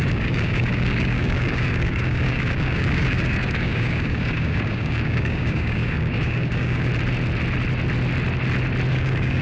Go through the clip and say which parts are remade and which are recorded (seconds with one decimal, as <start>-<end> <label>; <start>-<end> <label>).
0.0-6.9 remade; 6.9-8.9 recorded; 8.9-9.4 remade